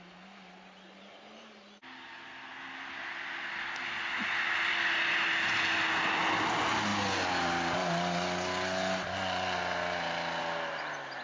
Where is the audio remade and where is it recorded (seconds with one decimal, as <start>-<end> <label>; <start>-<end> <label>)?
0.0-11.2 recorded